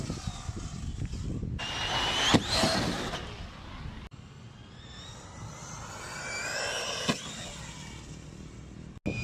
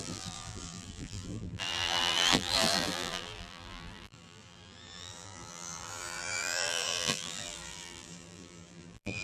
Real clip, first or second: first